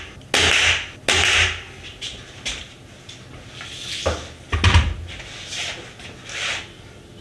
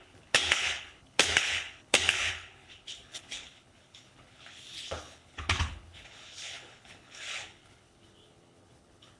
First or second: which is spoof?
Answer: second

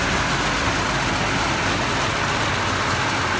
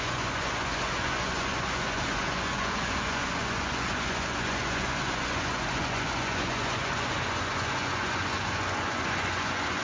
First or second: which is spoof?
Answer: second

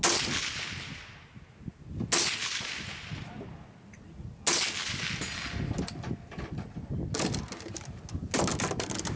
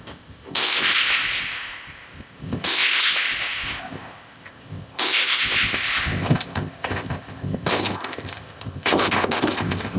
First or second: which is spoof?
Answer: second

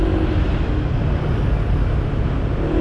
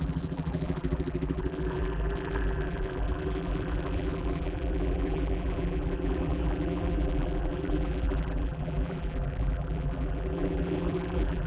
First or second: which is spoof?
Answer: second